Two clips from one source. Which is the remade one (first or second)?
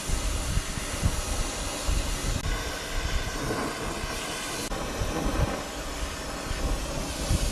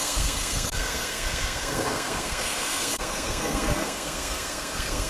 second